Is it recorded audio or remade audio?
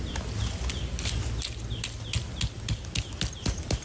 recorded